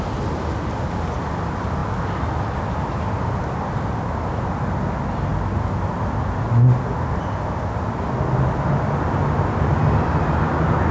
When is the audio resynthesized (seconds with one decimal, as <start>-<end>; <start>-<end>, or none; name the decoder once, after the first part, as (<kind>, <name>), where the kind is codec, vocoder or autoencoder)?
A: none